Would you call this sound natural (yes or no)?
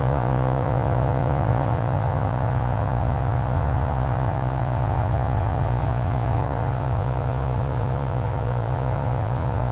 no